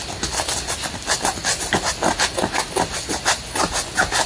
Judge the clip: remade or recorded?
recorded